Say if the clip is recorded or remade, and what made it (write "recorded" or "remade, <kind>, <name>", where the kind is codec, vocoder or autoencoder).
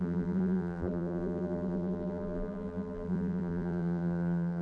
remade, vocoder, BigVGAN v2